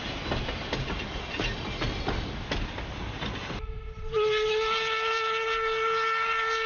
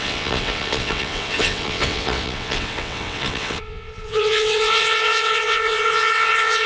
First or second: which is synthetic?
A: second